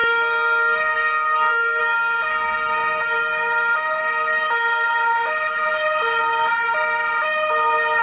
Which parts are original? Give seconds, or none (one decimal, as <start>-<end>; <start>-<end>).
1.8-8.0